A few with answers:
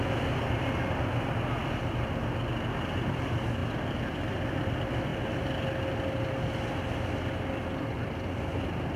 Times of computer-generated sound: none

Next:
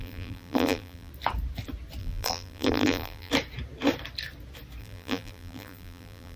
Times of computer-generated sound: 0.0-1.1 (vocoder, BigVGAN v2); 2.0-3.3; 4.8-6.4

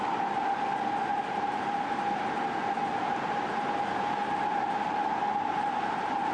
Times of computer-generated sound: 1.1-1.9 (vocoder, BigVGAN v2); 2.8-6.3

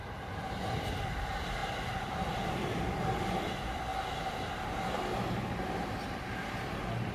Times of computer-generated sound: 0.0-1.6 (vocoder, BigVGAN v2); 2.1-3.9; 4.8-7.1

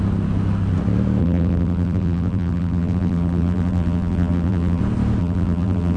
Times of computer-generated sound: 1.2-4.8 (vocoder, BigVGAN v2); 5.2-6.0

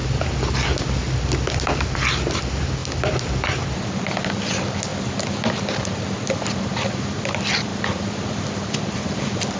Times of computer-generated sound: 1.5-4.9 (vocoder, BigVGAN v2); 5.5-7.7; 8.3-9.6

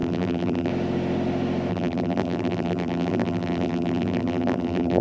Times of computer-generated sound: 0.0-0.7 (vocoder, BigVGAN v2); 1.7-5.0